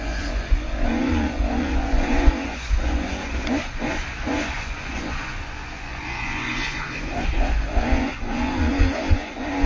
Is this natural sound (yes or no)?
no